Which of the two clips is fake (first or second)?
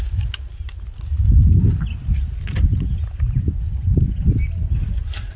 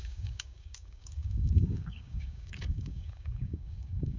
second